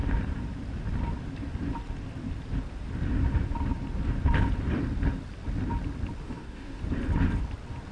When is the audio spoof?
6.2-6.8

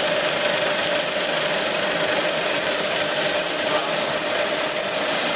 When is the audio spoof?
none

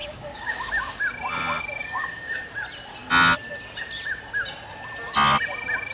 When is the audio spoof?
0.0-0.7; 1.8-2.4

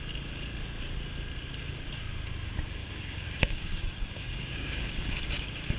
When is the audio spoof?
2.8-5.8

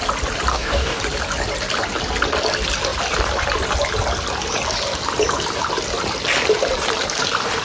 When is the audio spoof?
0.5-1.0

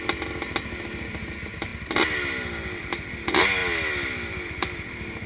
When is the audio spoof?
none